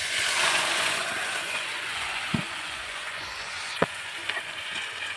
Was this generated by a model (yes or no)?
yes